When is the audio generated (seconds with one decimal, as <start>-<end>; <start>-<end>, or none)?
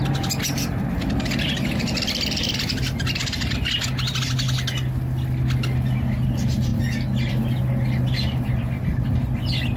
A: none